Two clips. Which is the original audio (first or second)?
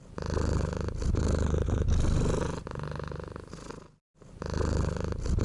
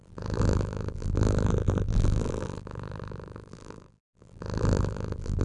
first